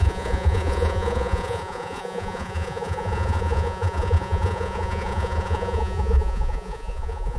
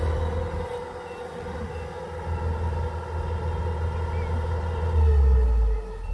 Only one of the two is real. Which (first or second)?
second